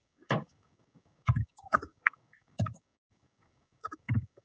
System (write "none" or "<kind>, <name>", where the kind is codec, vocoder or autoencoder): codec, DAC